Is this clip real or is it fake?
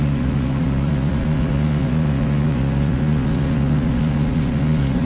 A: fake